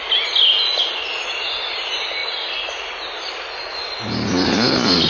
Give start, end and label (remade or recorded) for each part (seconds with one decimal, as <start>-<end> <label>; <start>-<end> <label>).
0.0-5.1 recorded